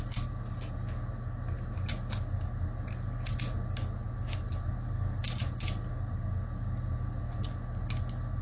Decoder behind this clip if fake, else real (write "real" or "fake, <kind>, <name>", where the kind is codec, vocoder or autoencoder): real